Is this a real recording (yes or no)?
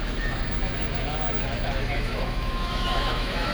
no